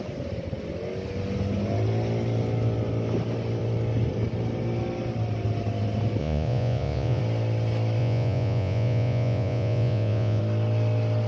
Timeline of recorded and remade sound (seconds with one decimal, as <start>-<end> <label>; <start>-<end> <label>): 0.0-6.2 recorded; 6.2-7.2 remade; 7.2-8.0 recorded; 8.0-10.4 remade; 10.4-11.3 recorded